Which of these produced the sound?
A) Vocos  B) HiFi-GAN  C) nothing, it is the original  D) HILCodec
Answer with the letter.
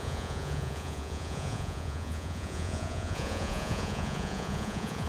A